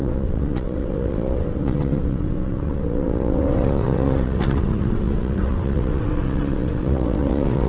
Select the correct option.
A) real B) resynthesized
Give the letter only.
B